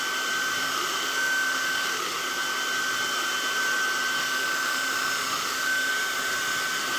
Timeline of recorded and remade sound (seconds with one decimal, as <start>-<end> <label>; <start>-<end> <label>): 0.0-0.6 recorded; 0.6-2.3 remade; 2.3-4.2 recorded; 4.2-5.9 remade; 5.9-7.0 recorded